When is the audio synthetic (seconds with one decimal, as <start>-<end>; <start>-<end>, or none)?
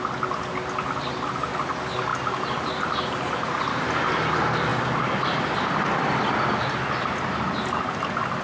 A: none